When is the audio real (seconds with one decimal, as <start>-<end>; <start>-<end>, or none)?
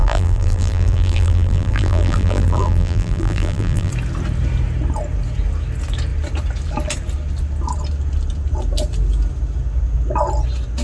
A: 3.9-10.8